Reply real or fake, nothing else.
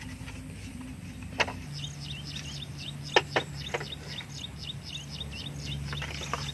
real